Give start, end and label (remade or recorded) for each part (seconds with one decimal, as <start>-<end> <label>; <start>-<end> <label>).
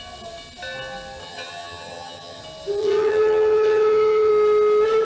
0.0-1.2 recorded; 1.2-2.4 remade; 2.4-2.8 recorded; 2.8-4.3 remade; 4.3-5.0 recorded